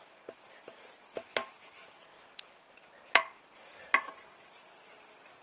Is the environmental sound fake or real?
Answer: real